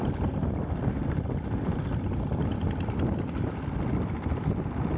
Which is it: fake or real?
real